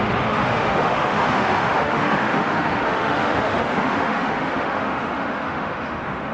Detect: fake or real fake